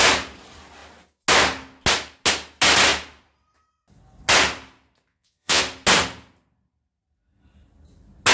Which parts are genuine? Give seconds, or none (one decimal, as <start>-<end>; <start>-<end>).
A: 0.0-5.1; 5.6-8.3